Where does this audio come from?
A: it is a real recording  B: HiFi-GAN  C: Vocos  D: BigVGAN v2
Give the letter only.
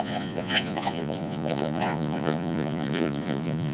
C